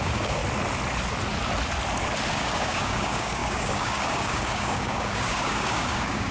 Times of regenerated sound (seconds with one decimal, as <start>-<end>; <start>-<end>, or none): 0.0-0.4; 2.3-6.3

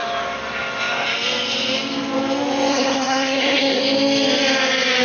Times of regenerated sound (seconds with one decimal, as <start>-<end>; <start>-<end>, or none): 2.7-3.8

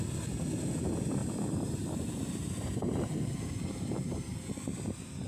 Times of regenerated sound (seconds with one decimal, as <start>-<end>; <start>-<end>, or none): 1.2-4.2